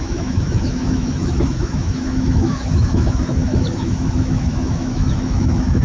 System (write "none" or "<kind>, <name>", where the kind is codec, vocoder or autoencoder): autoencoder, DAC-VAE